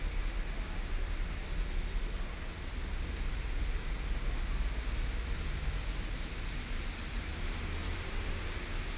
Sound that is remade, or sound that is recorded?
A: recorded